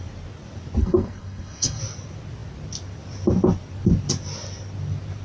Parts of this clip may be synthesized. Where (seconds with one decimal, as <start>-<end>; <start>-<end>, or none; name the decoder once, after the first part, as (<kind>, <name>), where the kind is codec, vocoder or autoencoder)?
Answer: 0.8-1.8 (codec, SNAC)